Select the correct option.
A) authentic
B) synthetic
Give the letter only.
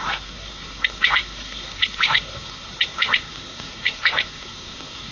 B